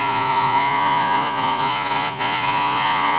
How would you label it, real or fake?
fake